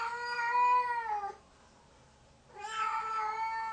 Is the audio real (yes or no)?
yes